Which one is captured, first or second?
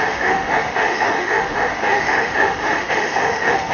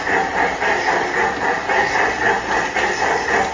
second